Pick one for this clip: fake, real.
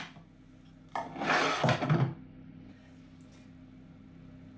real